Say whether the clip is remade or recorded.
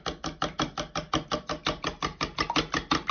recorded